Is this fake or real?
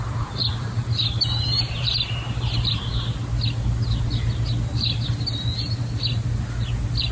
real